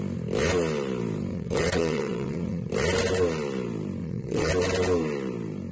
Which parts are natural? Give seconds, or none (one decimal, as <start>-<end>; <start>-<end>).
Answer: 0.0-1.3; 2.7-4.0; 4.5-5.7